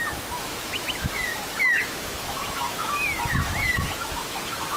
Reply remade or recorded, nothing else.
remade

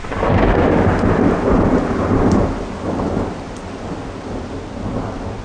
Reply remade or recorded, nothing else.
recorded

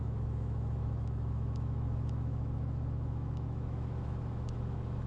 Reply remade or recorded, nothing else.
remade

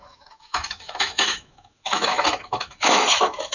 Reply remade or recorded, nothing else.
remade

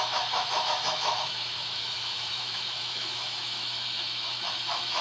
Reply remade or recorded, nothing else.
remade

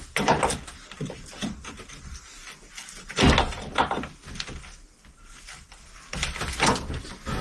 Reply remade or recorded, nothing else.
recorded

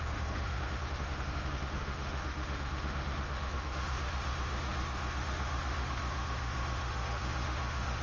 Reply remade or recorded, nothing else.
remade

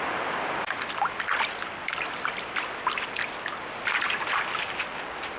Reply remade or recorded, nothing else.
recorded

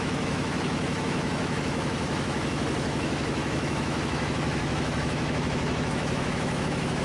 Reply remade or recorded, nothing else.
remade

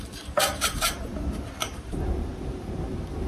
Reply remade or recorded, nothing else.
recorded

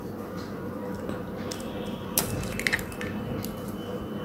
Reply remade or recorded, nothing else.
recorded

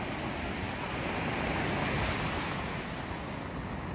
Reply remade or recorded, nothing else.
recorded